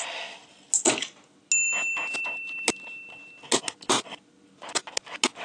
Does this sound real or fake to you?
real